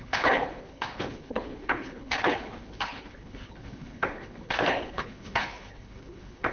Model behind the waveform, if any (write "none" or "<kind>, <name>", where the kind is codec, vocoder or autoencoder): codec, HILCodec